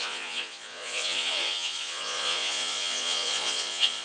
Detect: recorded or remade remade